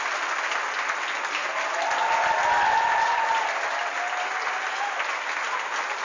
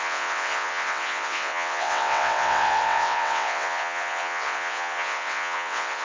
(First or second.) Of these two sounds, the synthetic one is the second